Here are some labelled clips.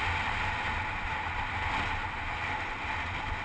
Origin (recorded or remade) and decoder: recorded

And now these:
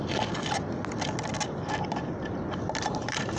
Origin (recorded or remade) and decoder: recorded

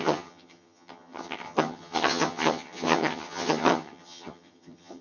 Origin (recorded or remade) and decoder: remade, vocoder, HiFi-GAN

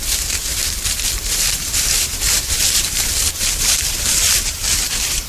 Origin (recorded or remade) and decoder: remade, vocoder, BigVGAN v2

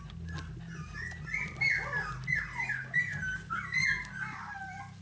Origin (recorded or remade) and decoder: recorded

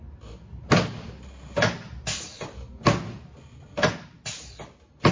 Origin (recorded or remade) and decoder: recorded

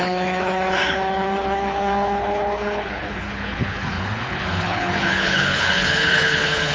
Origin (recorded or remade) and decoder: remade, codec, HILCodec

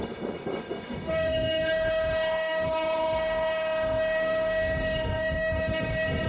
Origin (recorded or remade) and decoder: remade, autoencoder, DAC-VAE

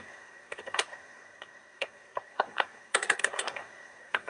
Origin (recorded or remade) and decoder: remade, codec, SNAC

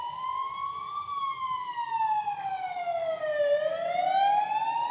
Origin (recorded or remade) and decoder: recorded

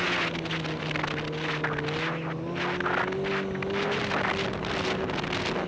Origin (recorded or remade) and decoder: recorded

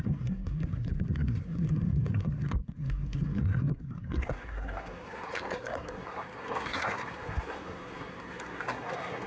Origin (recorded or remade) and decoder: remade, codec, SNAC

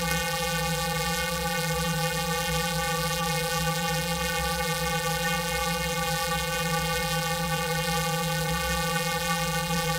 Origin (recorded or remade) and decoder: remade, vocoder, BigVGAN v2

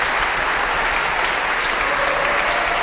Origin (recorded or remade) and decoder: recorded